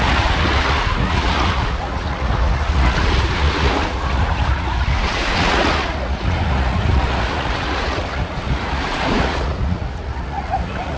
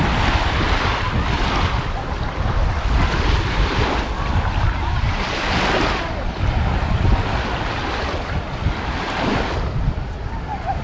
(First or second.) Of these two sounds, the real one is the second